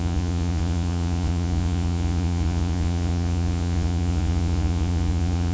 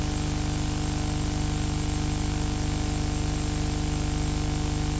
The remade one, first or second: first